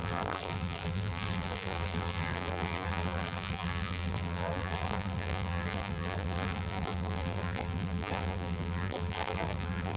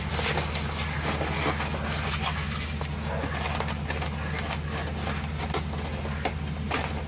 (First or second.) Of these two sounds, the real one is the second